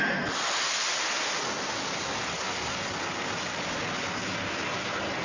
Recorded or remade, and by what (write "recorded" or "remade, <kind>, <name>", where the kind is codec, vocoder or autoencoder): recorded